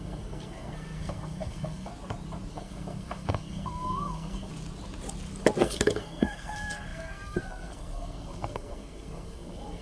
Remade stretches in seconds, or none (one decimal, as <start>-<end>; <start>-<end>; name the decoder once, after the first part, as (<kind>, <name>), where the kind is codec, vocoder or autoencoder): 0.0-1.9 (codec, SNAC); 2.5-4.5; 5.6-9.8